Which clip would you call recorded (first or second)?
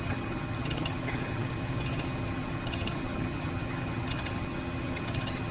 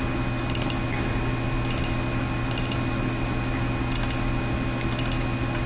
second